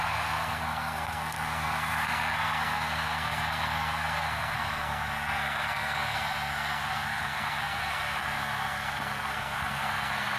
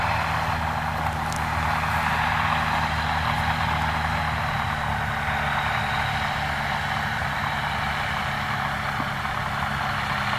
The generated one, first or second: first